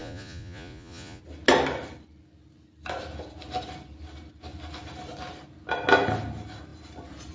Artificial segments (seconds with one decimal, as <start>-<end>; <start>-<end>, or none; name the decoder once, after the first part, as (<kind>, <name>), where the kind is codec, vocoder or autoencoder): 0.0-1.2 (vocoder, Vocos)